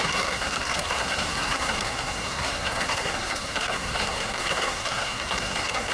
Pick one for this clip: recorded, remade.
remade